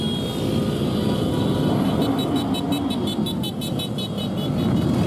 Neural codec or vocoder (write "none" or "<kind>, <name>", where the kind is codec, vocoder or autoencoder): none